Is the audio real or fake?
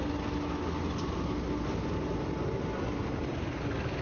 real